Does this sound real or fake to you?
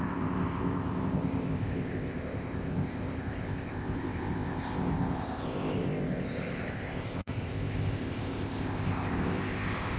fake